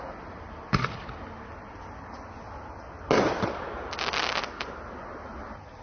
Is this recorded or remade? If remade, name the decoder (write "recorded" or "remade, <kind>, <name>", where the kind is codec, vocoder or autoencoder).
recorded